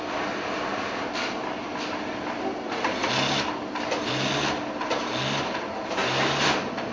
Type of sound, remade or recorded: recorded